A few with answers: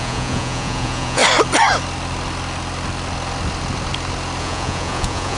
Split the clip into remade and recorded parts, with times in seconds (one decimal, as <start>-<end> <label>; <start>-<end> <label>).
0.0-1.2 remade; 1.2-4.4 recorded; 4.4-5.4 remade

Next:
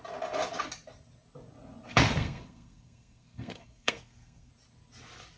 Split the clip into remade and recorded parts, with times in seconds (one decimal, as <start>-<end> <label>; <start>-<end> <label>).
0.0-1.9 recorded; 1.9-4.5 remade; 4.5-5.4 recorded

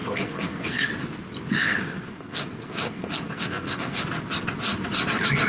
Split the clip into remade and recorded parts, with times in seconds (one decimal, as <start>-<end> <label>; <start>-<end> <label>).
0.0-0.9 remade; 0.9-1.6 recorded; 1.6-4.0 remade; 4.0-5.5 recorded